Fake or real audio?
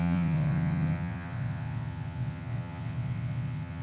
fake